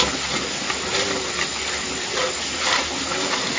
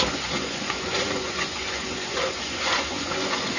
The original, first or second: first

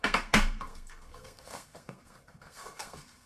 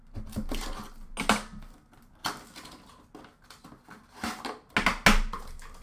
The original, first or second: second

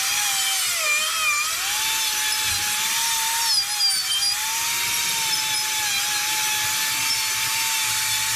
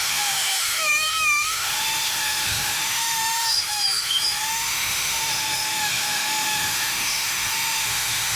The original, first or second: first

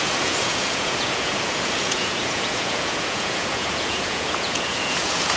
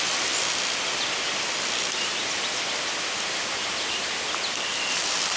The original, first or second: second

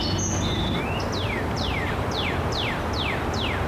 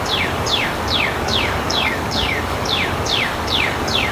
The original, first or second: first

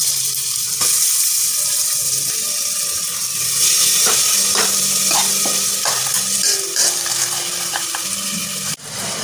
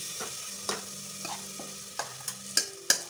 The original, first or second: second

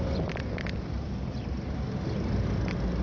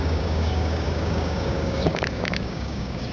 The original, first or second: first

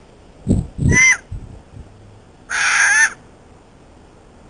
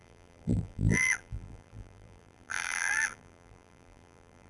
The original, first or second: first